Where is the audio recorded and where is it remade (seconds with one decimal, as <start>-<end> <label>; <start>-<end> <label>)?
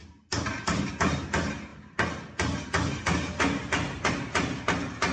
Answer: 0.0-5.1 recorded